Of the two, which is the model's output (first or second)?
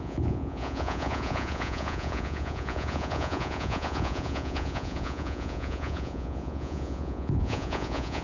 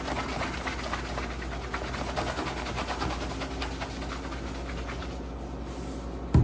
first